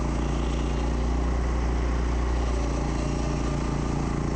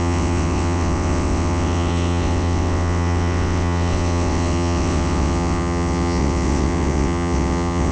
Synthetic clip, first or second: second